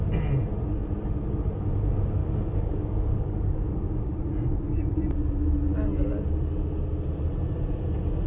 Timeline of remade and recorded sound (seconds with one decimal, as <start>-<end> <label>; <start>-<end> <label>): 0.0-2.2 recorded; 2.2-4.2 remade; 4.2-8.3 recorded